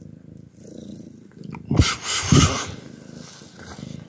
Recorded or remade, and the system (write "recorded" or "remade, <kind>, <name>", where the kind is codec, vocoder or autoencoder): recorded